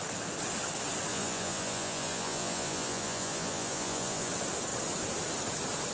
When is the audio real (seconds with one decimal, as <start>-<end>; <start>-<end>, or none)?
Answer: 0.0-1.1; 4.3-5.9